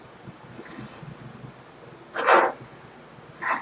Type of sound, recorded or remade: recorded